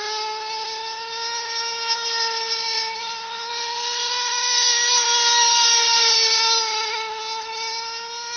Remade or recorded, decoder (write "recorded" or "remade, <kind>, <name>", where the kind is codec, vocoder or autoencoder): recorded